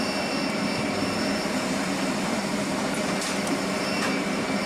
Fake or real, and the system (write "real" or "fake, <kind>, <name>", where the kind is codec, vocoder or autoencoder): fake, vocoder, BigVGAN v2